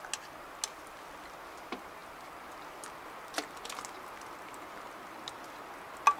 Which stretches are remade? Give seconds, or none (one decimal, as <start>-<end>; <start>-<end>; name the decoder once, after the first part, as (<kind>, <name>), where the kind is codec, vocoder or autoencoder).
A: none